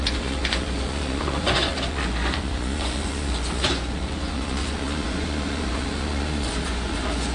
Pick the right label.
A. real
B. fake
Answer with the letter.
B